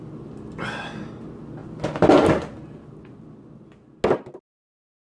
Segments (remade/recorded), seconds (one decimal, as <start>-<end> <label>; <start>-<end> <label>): 0.0-5.0 recorded